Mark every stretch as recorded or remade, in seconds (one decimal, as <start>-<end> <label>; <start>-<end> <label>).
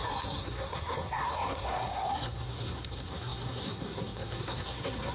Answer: 0.0-5.1 remade